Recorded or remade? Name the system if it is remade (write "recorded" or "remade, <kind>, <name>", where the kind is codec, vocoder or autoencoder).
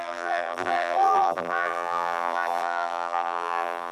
remade, vocoder, BigVGAN v2